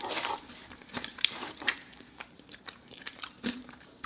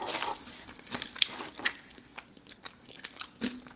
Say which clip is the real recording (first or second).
second